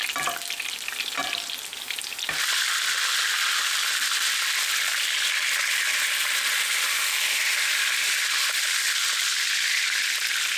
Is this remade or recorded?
recorded